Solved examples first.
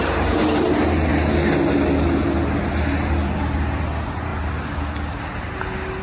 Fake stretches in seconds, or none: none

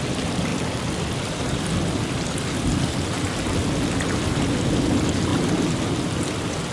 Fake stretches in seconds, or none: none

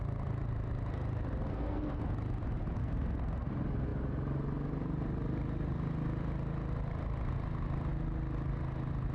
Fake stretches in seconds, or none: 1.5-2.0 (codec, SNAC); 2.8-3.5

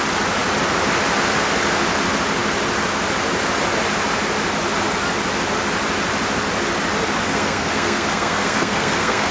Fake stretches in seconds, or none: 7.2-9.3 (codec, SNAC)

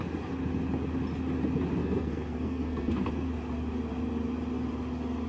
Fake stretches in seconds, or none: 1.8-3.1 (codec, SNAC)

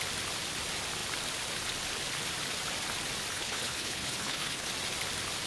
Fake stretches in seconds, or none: 3.3-4.7 (codec, HILCodec)